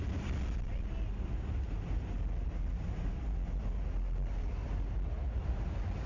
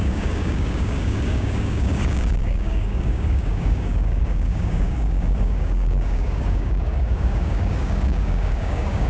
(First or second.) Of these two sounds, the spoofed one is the second